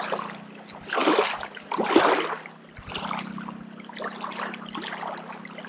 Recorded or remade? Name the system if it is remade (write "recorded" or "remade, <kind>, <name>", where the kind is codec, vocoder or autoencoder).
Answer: recorded